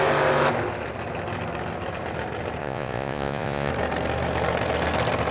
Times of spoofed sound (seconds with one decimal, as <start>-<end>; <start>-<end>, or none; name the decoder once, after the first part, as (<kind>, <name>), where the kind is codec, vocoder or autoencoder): 2.6-3.7 (vocoder, Vocos)